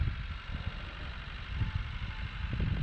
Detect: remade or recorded recorded